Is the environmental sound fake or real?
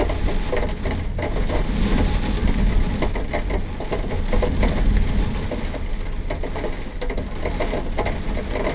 real